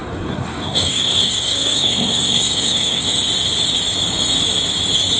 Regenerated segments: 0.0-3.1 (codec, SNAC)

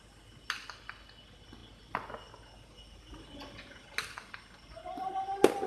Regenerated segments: none

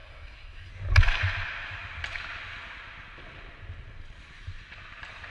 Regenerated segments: 0.0-0.7 (codec, SNAC)

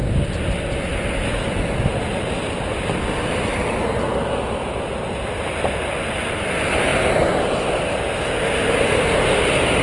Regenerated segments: none